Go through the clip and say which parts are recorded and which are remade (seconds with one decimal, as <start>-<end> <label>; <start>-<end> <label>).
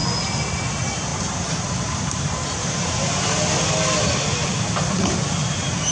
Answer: 0.0-1.1 recorded; 1.1-2.0 remade; 2.0-2.6 recorded; 2.6-3.7 remade; 3.7-5.9 recorded